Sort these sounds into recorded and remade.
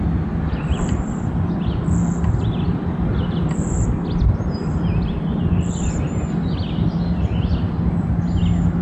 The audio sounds recorded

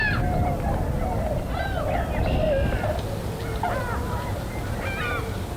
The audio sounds recorded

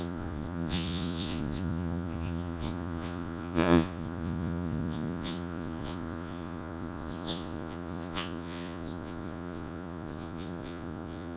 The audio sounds remade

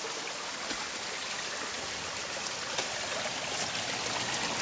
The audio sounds recorded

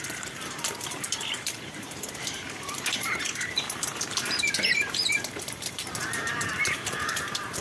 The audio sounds remade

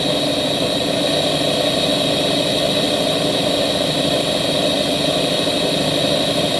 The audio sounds recorded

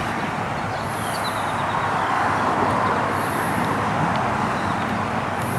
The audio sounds recorded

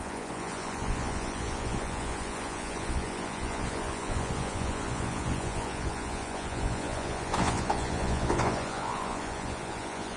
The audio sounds remade